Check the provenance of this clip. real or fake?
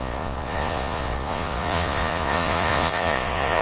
fake